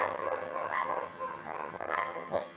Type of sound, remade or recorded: remade